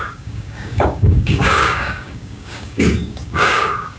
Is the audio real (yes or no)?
no